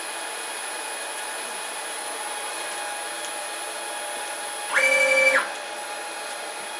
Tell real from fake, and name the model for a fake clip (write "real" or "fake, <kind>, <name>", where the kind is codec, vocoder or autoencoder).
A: real